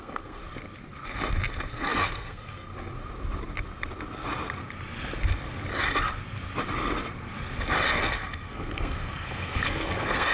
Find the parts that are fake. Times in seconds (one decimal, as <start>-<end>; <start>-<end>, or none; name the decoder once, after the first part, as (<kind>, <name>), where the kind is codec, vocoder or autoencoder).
0.0-0.4 (codec, SNAC); 1.7-2.7; 7.9-10.3